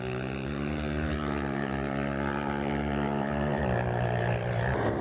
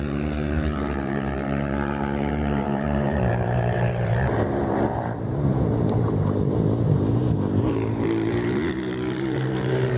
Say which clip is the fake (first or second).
second